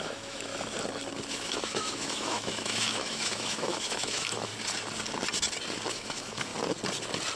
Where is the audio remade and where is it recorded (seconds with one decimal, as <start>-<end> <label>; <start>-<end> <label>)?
0.0-0.5 remade; 0.5-1.3 recorded; 1.3-4.5 remade; 4.5-5.9 recorded; 5.9-6.5 remade; 6.5-7.4 recorded